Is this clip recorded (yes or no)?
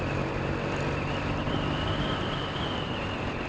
yes